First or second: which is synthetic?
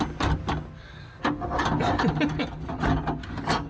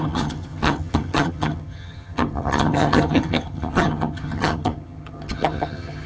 second